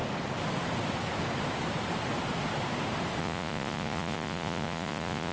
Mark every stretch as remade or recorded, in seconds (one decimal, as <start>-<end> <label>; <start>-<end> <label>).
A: 0.0-3.2 recorded; 3.2-5.3 remade